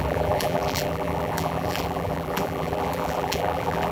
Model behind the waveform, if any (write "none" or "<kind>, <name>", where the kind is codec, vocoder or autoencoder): vocoder, BigVGAN v2